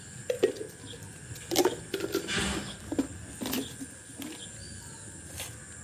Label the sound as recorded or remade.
recorded